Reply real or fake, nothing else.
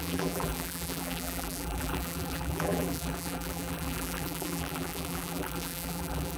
fake